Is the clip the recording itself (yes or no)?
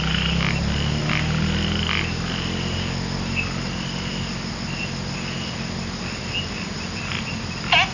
yes